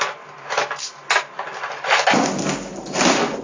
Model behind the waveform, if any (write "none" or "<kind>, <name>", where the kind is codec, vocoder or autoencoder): none